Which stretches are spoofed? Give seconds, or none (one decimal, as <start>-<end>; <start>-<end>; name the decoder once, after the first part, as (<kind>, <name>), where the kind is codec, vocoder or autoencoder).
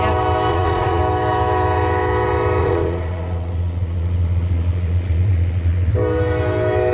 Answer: 0.5-1.0 (vocoder, Vocos); 2.6-5.9